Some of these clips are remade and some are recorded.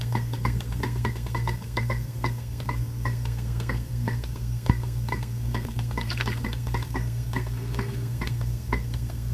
remade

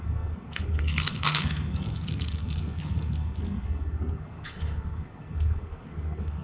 remade